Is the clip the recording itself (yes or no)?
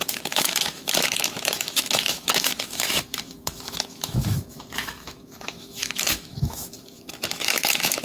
no